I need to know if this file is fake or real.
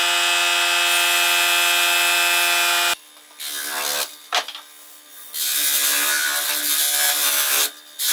real